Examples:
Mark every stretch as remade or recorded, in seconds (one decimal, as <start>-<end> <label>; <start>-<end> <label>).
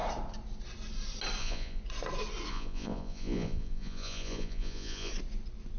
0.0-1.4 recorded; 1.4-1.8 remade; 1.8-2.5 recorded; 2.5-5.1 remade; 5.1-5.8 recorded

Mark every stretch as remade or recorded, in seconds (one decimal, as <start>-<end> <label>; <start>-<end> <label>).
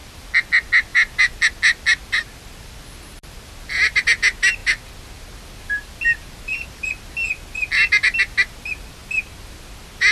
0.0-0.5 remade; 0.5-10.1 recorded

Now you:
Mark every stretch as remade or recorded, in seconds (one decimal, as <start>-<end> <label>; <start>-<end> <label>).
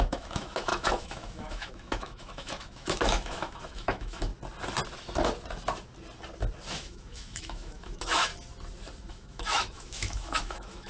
0.0-4.3 remade; 4.3-6.7 recorded; 6.7-8.3 remade; 8.3-9.1 recorded; 9.1-10.9 remade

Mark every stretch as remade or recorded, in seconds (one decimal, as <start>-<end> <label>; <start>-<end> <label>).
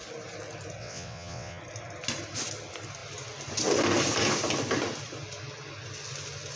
0.0-0.8 recorded; 0.8-1.6 remade; 1.6-6.6 recorded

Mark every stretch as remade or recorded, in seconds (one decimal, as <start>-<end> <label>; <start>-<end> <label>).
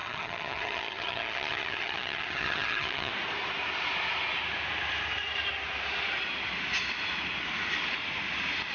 0.0-3.1 remade; 3.1-8.7 recorded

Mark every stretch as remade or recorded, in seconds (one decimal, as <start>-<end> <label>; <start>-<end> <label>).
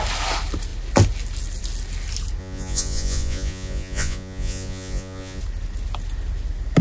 0.0-2.4 recorded; 2.4-5.4 remade; 5.4-6.8 recorded